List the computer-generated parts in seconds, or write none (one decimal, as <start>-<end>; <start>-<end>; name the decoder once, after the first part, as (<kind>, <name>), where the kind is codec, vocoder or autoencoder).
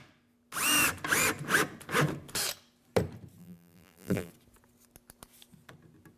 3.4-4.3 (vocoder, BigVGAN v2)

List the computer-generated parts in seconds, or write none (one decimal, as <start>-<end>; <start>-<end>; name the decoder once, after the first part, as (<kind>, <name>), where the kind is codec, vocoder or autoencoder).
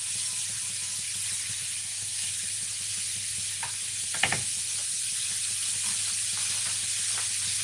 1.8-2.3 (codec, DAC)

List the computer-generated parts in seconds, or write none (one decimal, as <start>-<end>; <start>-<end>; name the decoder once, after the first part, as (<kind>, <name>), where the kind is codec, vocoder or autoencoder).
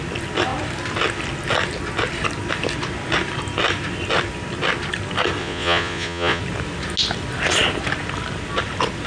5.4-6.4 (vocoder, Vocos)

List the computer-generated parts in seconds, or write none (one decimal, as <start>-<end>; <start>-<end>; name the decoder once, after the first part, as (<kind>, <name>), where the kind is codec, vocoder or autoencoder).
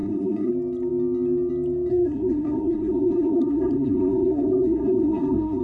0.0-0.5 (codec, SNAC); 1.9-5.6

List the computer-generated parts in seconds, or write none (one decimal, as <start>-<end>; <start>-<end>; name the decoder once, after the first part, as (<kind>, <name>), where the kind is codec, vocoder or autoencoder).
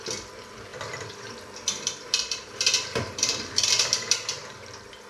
0.7-3.8 (vocoder, BigVGAN v2)